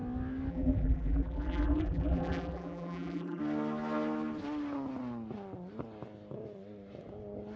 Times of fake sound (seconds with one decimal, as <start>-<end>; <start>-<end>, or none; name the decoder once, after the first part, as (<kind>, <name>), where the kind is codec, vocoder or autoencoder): 0.5-3.4 (vocoder, BigVGAN v2)